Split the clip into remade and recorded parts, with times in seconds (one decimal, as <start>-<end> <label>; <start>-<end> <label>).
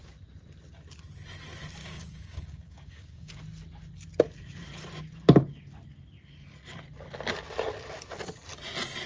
0.0-1.8 recorded; 1.8-3.4 remade; 3.4-9.1 recorded